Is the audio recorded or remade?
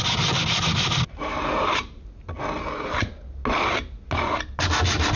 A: recorded